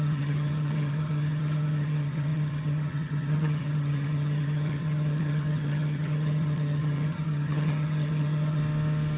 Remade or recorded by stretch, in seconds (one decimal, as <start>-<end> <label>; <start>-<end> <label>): 0.0-8.6 remade; 8.6-9.2 recorded